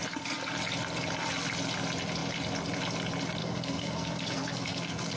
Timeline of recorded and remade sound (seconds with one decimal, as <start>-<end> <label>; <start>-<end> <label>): 0.0-3.4 recorded; 3.4-5.2 remade